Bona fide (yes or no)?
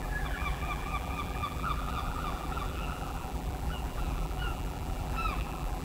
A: no